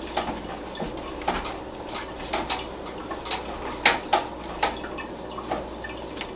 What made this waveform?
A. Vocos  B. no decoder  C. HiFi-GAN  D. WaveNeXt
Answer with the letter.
B